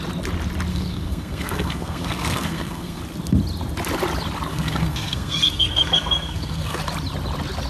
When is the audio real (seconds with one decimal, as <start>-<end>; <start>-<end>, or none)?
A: 0.0-0.7; 3.0-4.5; 6.8-7.7